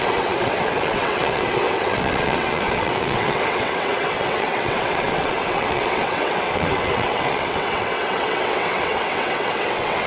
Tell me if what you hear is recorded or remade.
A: remade